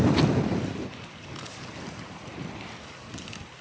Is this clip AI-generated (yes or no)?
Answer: no